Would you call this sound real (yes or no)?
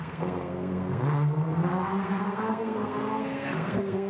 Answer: no